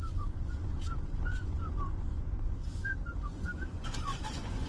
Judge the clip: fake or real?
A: fake